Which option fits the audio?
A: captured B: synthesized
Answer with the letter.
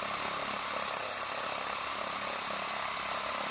A